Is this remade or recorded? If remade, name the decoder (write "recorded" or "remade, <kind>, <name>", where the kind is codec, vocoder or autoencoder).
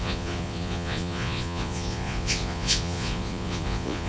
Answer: remade, vocoder, Vocos